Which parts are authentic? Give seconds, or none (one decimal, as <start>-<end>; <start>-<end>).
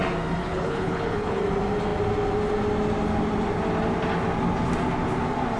0.0-0.4; 1.4-5.6